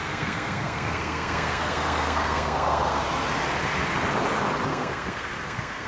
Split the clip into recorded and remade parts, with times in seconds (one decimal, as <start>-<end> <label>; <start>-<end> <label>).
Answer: 0.0-3.0 remade; 3.0-4.7 recorded; 4.7-5.9 remade